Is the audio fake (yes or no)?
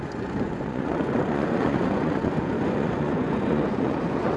yes